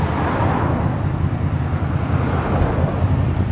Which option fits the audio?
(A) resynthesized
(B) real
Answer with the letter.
B